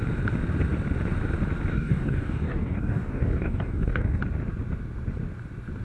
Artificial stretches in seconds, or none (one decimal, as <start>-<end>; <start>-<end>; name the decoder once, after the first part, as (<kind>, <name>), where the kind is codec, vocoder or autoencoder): 1.7-4.2 (codec, DAC)